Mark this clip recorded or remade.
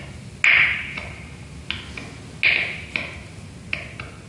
recorded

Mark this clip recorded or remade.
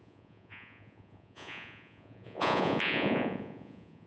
remade